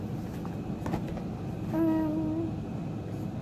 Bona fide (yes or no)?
yes